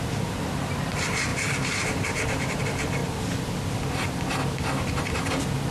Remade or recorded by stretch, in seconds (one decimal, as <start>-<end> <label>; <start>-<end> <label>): 0.0-1.3 recorded; 1.3-2.6 remade; 2.6-5.7 recorded

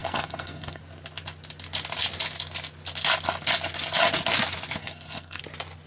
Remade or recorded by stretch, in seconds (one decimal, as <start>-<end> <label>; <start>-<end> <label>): 0.0-0.8 remade; 0.8-4.8 recorded; 4.8-5.4 remade; 5.4-5.9 recorded

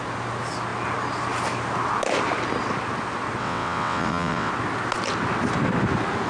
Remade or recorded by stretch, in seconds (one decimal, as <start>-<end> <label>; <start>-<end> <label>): 0.0-3.4 recorded; 3.4-4.5 remade; 4.5-6.3 recorded

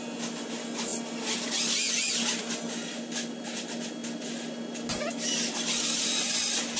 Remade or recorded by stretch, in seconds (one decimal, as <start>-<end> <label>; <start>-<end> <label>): 0.0-6.8 recorded

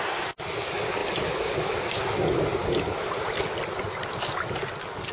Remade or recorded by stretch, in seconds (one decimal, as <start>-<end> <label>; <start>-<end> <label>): 0.0-5.1 recorded

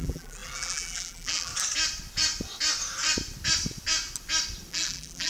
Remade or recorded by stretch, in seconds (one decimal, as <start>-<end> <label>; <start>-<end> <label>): 0.0-1.5 remade; 1.5-4.7 recorded; 4.7-5.3 remade

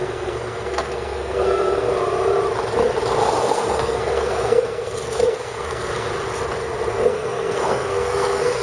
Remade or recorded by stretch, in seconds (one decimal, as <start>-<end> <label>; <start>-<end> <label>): 0.0-1.9 remade; 1.9-3.4 recorded; 3.4-6.1 remade; 6.1-6.9 recorded; 6.9-8.6 remade